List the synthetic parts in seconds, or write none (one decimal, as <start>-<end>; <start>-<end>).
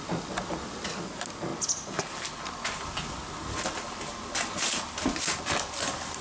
none